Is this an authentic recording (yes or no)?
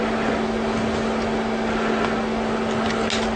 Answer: yes